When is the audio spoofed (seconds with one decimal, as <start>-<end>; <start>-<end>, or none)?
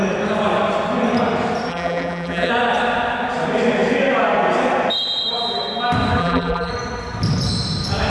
1.7-2.5; 6.2-6.7